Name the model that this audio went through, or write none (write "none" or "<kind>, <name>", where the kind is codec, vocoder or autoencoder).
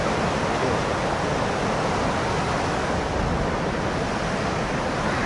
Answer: none